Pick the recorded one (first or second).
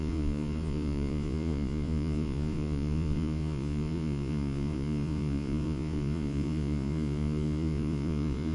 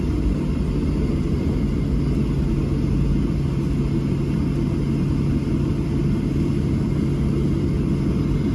second